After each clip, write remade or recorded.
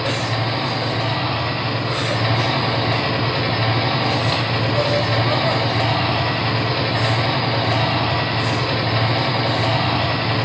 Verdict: recorded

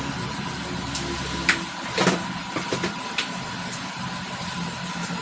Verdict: recorded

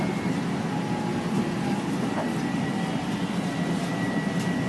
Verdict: remade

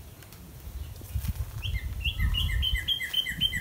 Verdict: recorded